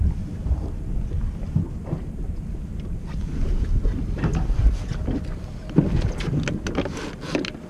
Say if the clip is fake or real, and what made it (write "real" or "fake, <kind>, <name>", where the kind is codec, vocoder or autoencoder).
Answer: real